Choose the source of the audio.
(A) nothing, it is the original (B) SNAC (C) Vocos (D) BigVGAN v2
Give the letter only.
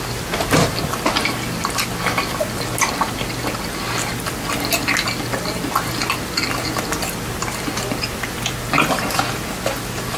A